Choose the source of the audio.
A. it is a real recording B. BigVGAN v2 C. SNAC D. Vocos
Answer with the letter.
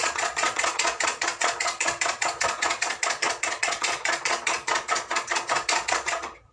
D